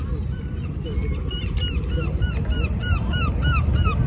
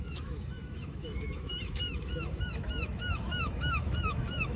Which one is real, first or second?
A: first